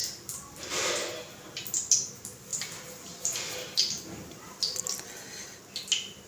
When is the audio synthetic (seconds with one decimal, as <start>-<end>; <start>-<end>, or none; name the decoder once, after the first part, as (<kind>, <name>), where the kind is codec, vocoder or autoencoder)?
0.0-0.9 (vocoder, BigVGAN v2); 2.5-4.8